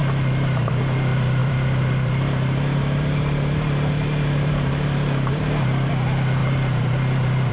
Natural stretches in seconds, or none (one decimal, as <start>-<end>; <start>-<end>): 0.0-1.4; 5.9-6.4